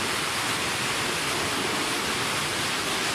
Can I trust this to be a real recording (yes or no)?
yes